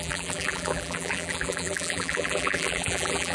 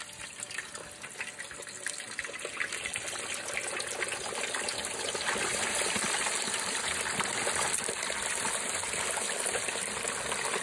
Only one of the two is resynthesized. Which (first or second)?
first